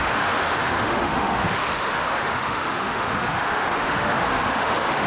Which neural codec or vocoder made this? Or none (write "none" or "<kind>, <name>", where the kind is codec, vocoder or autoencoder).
autoencoder, DAC-VAE